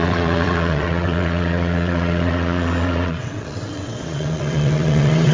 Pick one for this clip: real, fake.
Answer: fake